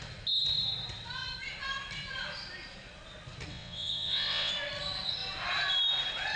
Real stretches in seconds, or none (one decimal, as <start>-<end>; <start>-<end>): 0.0-3.5; 4.5-6.4